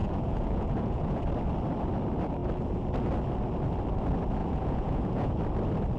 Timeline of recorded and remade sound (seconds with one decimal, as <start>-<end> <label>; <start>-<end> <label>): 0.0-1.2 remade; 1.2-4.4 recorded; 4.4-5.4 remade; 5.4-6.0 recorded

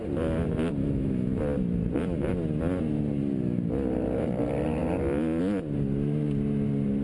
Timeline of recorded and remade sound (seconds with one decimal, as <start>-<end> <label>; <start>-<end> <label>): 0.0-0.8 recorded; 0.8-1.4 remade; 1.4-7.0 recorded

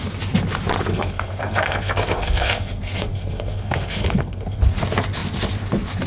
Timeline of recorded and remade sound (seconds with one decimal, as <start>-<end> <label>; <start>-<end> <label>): 0.0-0.9 recorded; 0.9-4.6 remade; 4.6-6.1 recorded

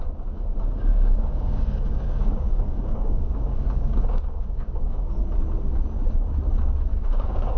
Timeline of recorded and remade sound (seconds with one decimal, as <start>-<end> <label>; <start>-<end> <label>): 0.0-0.9 recorded; 0.9-5.1 remade; 5.1-6.9 recorded; 6.9-7.6 remade

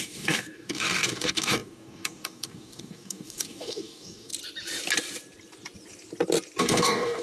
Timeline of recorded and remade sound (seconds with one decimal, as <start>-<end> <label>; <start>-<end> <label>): 0.0-4.3 remade; 4.3-6.6 recorded; 6.6-7.2 remade